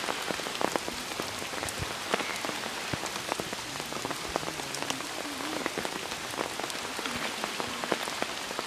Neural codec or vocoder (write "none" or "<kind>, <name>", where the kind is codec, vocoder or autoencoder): none